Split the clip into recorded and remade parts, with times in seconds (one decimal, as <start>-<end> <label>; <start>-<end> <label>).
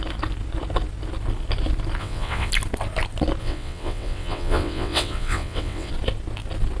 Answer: 0.0-2.0 recorded; 2.0-2.5 remade; 2.5-3.4 recorded; 3.4-5.9 remade; 5.9-6.8 recorded